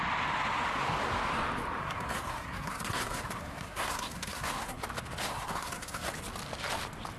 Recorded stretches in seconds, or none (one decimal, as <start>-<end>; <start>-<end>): 0.0-1.8; 4.8-5.3; 6.1-7.2